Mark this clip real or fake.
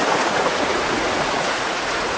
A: fake